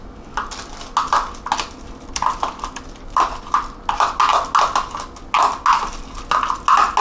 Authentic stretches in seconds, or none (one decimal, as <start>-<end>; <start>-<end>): 0.0-7.0